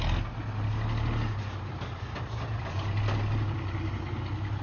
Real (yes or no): yes